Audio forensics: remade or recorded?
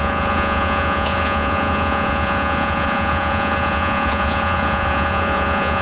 remade